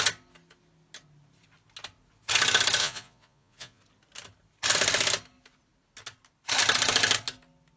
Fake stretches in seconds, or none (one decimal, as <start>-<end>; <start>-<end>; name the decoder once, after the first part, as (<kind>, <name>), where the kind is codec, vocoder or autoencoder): 2.8-3.8 (vocoder, Vocos)